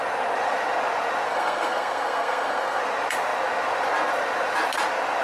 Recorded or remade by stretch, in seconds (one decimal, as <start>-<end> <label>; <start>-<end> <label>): 0.0-1.3 recorded; 1.3-2.8 remade; 2.8-5.2 recorded